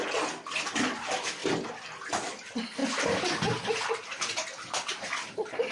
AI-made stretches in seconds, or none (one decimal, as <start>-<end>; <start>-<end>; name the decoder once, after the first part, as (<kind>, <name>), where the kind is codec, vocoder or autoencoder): none